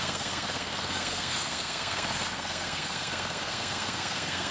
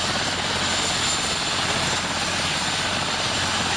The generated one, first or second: first